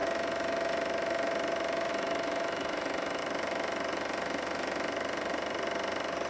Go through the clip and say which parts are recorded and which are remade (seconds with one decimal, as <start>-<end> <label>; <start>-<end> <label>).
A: 0.0-1.9 recorded; 1.9-3.2 remade; 3.2-6.3 recorded